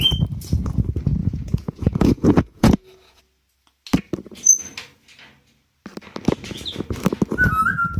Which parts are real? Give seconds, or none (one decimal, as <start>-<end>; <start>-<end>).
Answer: 0.0-1.2; 3.2-8.0